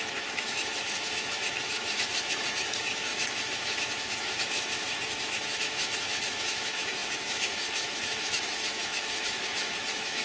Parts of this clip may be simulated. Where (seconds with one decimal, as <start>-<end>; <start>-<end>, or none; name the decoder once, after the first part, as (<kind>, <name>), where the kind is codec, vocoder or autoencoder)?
0.0-10.2 (autoencoder, DAC-VAE)